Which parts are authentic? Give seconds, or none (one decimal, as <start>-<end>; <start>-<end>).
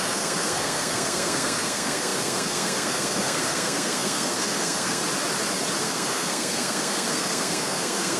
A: 5.0-5.8